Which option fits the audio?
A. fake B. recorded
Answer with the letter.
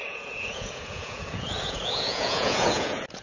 A